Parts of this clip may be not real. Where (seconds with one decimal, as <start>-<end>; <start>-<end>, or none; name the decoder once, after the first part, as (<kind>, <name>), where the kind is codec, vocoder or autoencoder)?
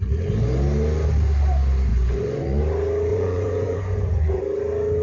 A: 1.9-2.6 (vocoder, Vocos); 3.1-4.4